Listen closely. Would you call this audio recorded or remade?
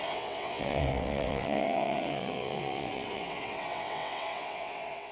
remade